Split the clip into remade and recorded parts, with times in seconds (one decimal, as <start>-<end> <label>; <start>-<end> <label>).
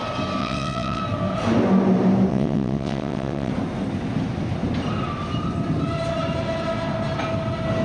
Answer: 0.0-0.4 recorded; 0.4-1.0 remade; 1.0-2.3 recorded; 2.3-3.5 remade; 3.5-7.8 recorded